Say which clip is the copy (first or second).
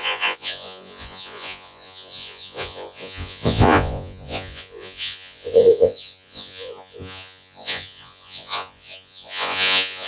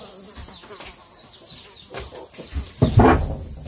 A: first